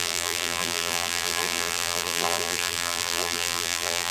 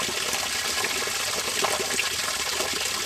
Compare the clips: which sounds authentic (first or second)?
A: second